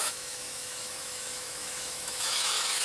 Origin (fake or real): fake